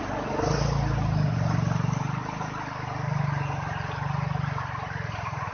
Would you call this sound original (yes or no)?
yes